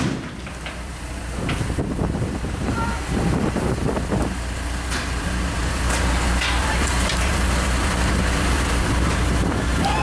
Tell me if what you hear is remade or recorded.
remade